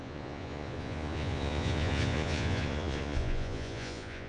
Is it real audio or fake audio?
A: fake